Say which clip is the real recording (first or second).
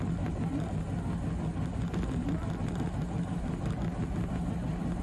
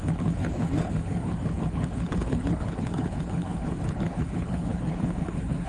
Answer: first